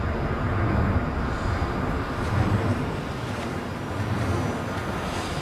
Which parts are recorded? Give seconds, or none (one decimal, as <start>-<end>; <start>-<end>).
0.0-2.7; 3.7-5.4